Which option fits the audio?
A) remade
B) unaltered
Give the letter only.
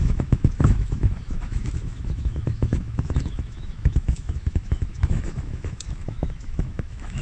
A